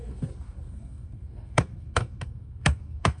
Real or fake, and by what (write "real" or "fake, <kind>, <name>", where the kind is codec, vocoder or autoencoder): fake, codec, SNAC